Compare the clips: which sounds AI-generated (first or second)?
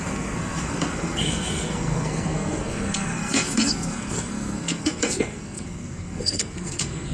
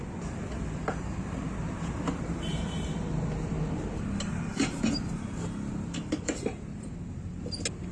first